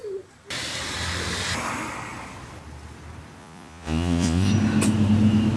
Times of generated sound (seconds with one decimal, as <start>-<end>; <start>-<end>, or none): 3.4-4.5